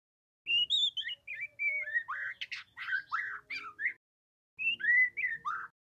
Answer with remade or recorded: recorded